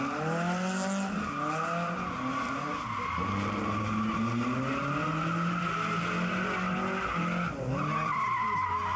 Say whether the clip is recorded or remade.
recorded